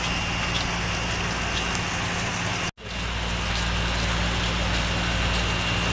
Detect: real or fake real